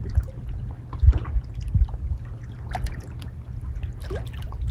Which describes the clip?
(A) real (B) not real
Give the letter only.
A